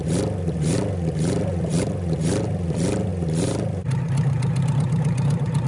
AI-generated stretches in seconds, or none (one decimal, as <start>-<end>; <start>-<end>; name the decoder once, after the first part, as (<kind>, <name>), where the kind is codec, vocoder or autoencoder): none

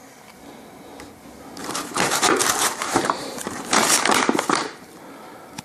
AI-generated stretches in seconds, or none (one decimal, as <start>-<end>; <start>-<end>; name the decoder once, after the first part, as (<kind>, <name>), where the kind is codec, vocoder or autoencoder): 1.6-5.0 (vocoder, BigVGAN v2)

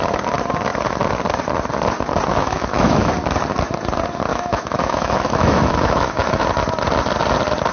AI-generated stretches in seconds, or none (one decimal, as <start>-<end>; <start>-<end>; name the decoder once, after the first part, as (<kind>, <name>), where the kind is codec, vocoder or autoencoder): 2.3-3.1 (autoencoder, DAC-VAE); 4.3-6.4

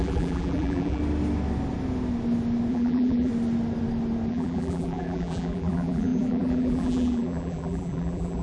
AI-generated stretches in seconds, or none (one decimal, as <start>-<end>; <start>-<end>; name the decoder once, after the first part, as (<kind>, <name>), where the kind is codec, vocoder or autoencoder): 0.0-1.0 (vocoder, BigVGAN v2); 2.7-3.3; 4.3-8.4

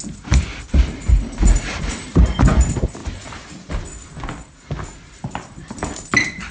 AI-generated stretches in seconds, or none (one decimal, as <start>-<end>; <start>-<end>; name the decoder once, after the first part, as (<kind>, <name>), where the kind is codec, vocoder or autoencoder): 0.5-2.2 (vocoder, BigVGAN v2); 3.0-3.7

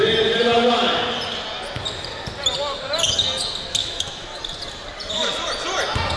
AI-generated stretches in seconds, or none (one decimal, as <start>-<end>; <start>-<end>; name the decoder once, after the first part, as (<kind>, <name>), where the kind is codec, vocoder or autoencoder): 3.8-4.4 (autoencoder, DAC-VAE)

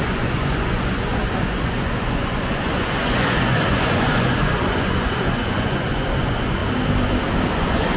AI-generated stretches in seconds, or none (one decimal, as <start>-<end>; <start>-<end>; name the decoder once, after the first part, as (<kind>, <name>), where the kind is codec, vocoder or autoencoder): 0.0-6.6 (vocoder, Vocos); 7.5-8.0